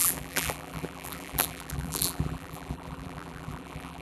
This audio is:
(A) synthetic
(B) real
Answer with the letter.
A